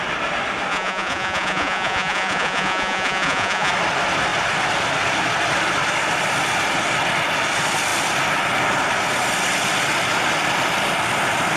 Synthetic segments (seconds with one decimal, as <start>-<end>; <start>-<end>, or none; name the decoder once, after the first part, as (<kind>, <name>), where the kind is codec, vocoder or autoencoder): 0.7-3.7 (vocoder, Vocos)